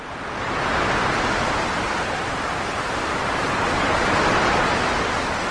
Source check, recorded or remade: recorded